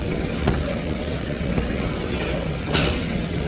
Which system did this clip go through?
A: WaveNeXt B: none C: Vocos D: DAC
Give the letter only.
A